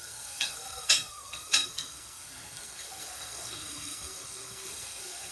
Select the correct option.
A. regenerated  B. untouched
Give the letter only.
A